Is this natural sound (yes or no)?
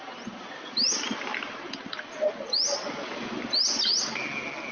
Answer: yes